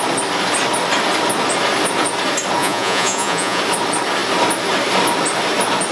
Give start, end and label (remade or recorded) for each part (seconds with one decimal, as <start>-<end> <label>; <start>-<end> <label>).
0.0-2.6 recorded; 2.6-3.6 remade; 3.6-5.9 recorded